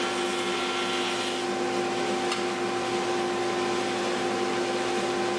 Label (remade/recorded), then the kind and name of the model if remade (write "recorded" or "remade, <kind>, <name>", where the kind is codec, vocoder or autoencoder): recorded